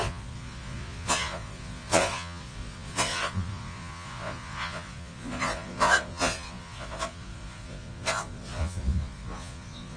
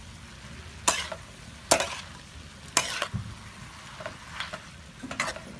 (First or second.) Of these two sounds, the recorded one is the second